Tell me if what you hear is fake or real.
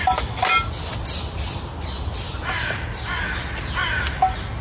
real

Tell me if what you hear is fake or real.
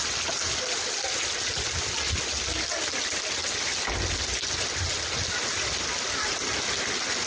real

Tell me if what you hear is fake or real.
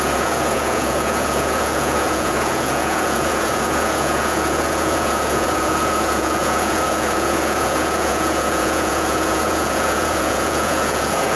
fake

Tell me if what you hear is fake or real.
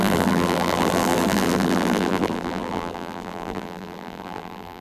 fake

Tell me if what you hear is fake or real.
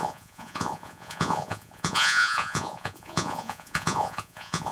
fake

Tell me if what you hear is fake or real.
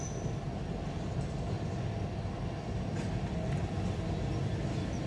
real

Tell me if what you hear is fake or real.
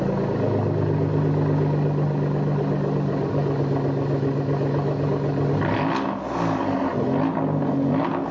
real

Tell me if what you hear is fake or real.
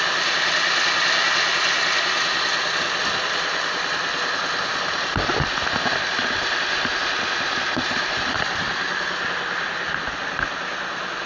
real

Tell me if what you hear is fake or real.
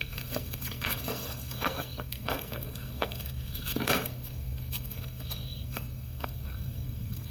fake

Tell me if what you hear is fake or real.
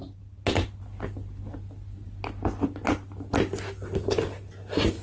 real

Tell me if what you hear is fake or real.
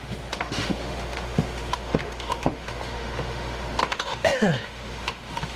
fake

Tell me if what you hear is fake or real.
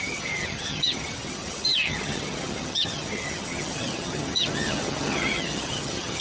fake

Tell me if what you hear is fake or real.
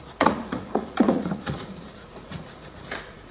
fake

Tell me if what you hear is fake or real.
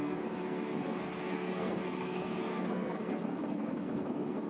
fake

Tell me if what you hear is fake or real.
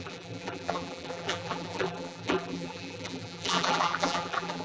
fake